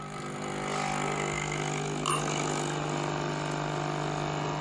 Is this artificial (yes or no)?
no